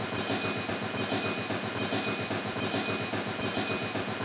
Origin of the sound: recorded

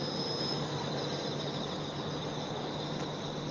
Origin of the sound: recorded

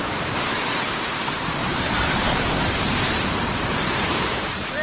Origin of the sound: remade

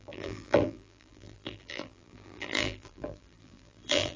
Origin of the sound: remade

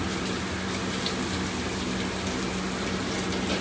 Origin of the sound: recorded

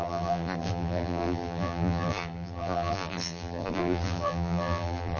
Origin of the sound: remade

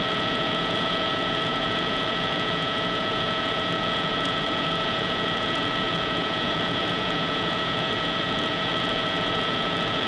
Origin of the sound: remade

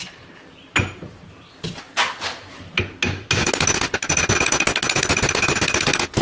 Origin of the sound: recorded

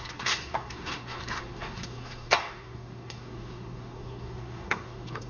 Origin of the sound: remade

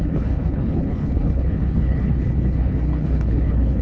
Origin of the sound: remade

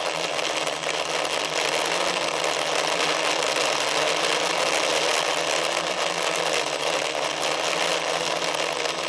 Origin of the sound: recorded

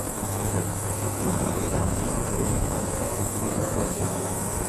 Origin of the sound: remade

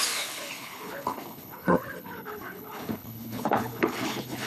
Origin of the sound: remade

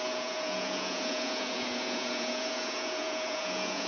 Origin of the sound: remade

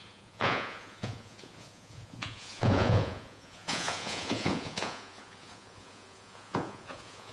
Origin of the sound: remade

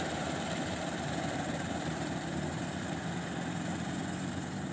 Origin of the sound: remade